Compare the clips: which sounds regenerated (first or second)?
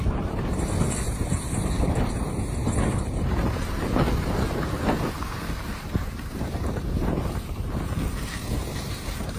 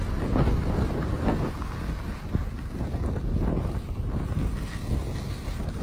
first